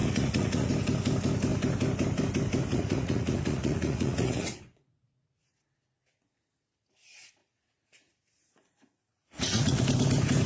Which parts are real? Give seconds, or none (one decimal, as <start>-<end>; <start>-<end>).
0.7-2.7; 5.5-7.4; 9.8-10.5